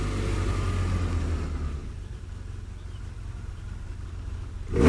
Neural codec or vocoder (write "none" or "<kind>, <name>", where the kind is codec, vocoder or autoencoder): none